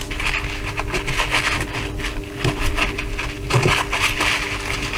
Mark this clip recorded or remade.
recorded